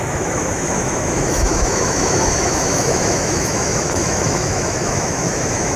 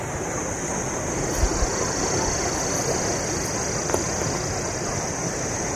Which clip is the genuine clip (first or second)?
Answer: second